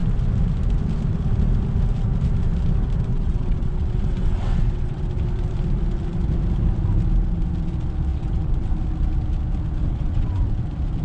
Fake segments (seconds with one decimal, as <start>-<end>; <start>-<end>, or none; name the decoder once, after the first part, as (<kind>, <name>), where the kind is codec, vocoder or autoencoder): 3.1-5.1 (vocoder, WaveNeXt); 8.1-8.7; 9.8-10.6